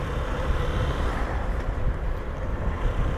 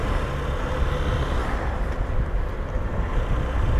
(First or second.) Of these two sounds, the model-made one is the first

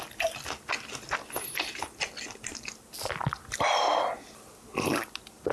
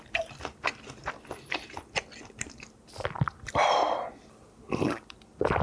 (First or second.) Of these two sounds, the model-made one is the second